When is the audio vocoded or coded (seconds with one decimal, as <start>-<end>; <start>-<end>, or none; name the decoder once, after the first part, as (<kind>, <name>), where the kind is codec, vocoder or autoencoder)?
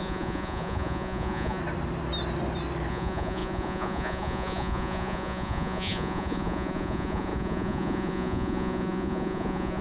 0.0-1.6 (vocoder, Vocos); 2.9-9.8